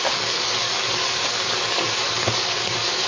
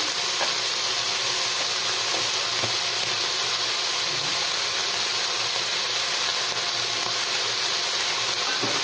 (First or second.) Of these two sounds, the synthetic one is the first